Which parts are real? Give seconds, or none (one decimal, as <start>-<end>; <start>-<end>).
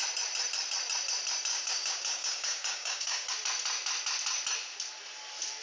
0.0-1.5; 3.3-5.6